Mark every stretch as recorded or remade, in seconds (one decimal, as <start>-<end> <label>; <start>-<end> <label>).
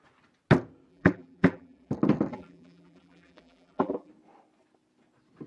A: 0.0-0.9 recorded; 0.9-1.9 remade; 1.9-2.3 recorded; 2.3-4.1 remade; 4.1-5.5 recorded